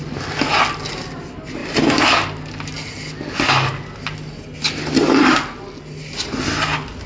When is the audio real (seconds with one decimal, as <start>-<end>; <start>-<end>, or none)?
0.0-7.1